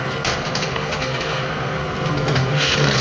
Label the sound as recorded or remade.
remade